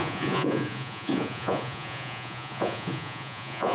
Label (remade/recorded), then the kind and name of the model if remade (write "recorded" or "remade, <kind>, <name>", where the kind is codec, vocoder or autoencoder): remade, vocoder, Vocos